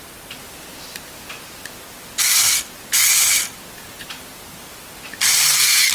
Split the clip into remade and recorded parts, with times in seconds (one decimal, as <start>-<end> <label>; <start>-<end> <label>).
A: 0.0-5.9 recorded